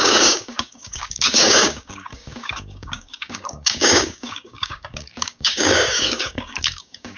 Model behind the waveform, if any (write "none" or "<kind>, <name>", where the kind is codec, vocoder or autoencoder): codec, DAC